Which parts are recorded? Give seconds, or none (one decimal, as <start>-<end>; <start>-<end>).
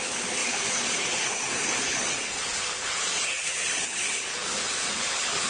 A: none